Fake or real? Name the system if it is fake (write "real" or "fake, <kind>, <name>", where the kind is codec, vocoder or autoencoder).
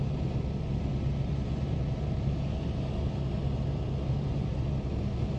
real